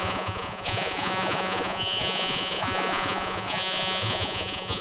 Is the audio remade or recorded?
remade